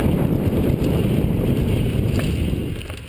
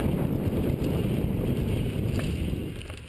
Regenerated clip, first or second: second